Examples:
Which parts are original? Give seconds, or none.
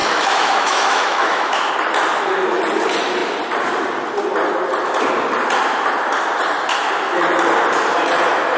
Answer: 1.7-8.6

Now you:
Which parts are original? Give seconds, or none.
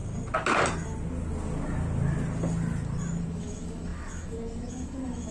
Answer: 0.0-3.2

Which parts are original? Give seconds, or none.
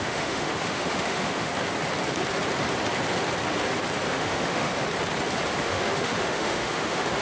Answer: 1.5-4.1; 4.7-5.6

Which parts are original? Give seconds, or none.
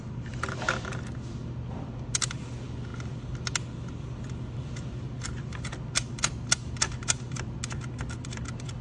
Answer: 0.0-8.8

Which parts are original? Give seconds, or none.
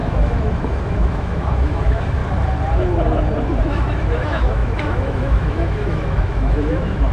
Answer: 2.2-3.6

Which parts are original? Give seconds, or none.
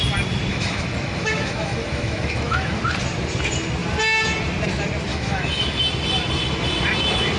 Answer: 0.0-0.5; 2.8-5.1; 5.8-7.4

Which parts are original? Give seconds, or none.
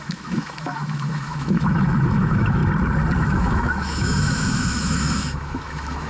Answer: 2.6-3.2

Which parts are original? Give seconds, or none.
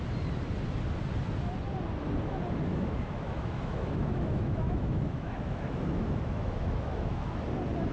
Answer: 0.0-2.7; 7.4-7.9